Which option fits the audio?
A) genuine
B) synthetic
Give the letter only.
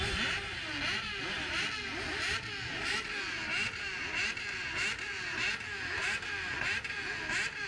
A